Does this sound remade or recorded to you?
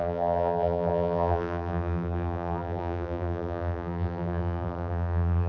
remade